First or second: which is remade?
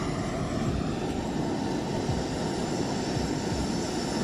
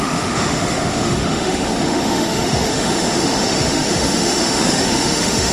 second